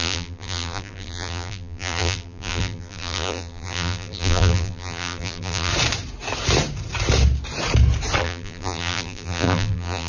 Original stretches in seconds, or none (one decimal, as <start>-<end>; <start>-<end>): 5.7-8.2